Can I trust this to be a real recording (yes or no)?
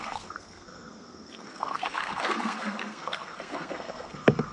no